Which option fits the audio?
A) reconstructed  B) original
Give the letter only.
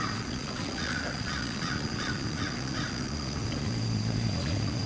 A